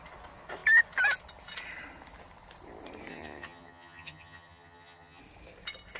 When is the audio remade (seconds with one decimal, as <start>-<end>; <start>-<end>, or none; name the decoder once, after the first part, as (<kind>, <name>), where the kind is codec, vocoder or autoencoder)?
3.1-5.2 (vocoder, HiFi-GAN)